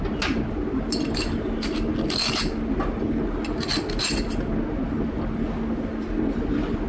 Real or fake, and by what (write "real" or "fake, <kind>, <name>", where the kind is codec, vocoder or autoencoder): real